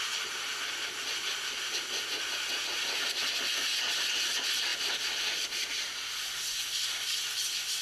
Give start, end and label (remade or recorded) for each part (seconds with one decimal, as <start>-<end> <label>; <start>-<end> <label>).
0.0-7.8 recorded